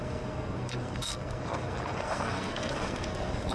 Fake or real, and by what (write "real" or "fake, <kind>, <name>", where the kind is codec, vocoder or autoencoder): fake, codec, SNAC